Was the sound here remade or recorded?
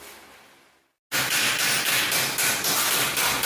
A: recorded